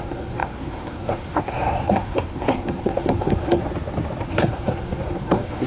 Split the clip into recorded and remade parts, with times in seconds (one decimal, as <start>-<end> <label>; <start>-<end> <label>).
0.0-3.6 remade; 3.6-4.2 recorded; 4.2-5.7 remade